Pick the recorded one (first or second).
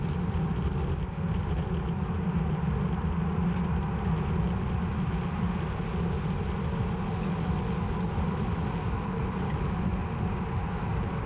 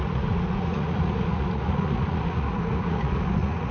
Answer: first